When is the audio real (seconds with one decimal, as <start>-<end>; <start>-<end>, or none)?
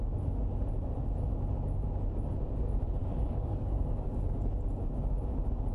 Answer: 0.0-3.0; 4.2-5.7